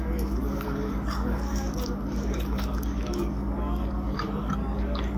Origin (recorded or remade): remade